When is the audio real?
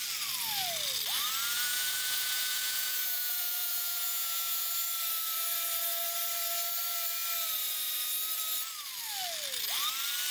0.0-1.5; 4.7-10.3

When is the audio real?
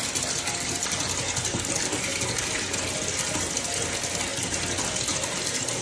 0.0-5.8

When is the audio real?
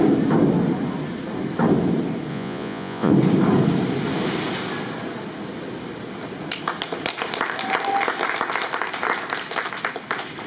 0.0-2.3; 3.1-10.5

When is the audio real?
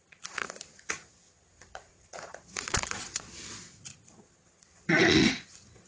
none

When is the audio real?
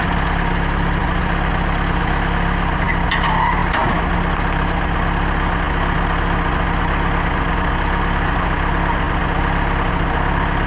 0.0-10.7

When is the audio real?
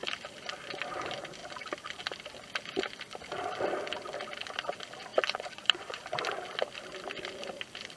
0.0-5.1; 6.0-8.0